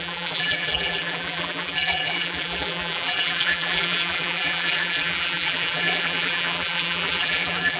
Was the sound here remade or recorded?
remade